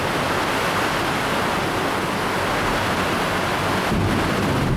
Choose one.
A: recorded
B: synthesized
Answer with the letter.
A